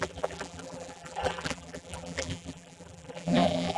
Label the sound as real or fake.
fake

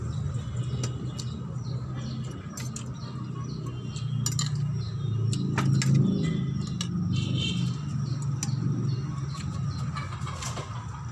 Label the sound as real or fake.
real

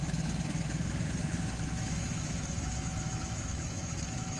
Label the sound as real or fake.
fake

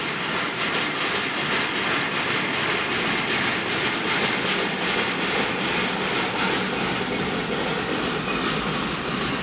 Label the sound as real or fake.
real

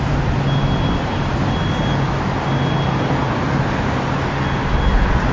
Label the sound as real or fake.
real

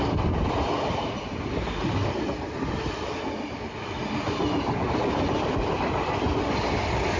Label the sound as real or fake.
fake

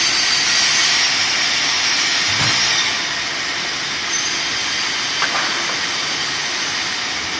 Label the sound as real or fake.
real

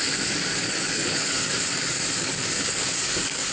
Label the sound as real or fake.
fake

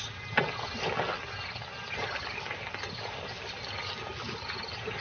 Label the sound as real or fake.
real